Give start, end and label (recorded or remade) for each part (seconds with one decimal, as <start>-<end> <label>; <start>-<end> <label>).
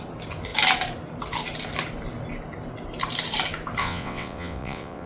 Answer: 0.0-3.8 recorded; 3.8-5.1 remade